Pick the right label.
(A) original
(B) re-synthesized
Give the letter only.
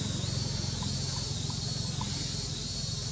A